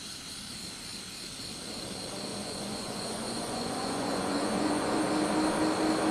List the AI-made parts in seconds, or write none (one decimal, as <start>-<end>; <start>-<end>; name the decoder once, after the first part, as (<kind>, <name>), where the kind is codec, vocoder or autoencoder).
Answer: 2.3-5.0 (vocoder, Vocos)